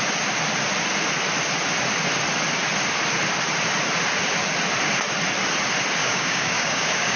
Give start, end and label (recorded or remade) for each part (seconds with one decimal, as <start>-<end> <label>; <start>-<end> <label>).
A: 0.0-6.0 recorded; 6.0-7.2 remade

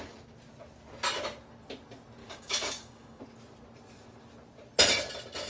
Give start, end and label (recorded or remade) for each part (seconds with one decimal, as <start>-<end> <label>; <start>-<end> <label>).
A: 0.0-2.2 recorded; 2.2-3.2 remade; 3.2-5.5 recorded